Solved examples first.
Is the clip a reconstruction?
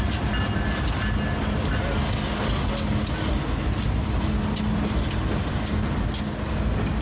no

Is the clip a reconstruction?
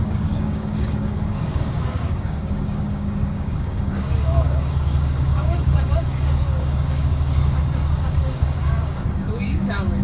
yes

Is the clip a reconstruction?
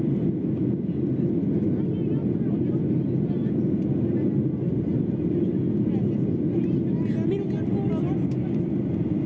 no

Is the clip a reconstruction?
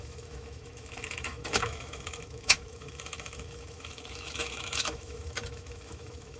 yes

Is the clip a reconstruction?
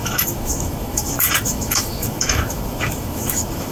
yes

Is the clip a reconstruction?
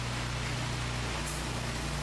no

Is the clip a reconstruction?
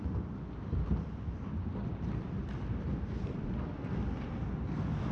no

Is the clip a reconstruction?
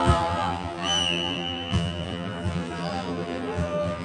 yes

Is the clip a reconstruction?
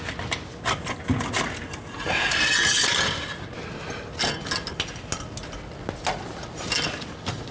no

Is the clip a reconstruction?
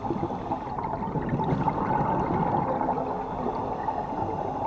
no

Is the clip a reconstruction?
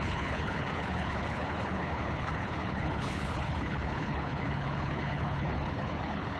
yes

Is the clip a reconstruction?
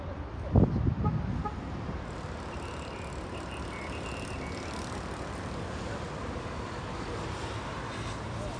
yes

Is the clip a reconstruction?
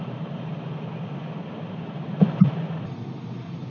no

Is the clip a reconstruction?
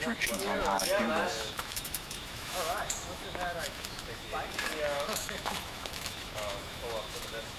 yes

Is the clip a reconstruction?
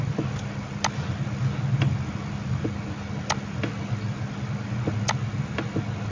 no